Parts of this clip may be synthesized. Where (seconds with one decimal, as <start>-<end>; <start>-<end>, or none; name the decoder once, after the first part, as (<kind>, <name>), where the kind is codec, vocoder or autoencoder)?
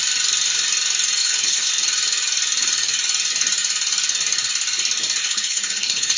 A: 1.2-1.7 (codec, HILCodec); 5.2-6.2